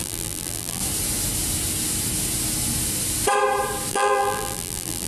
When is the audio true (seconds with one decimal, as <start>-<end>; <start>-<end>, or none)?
0.8-3.9